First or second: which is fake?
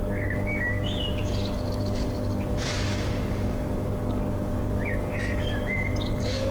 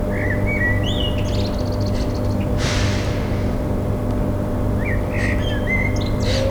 first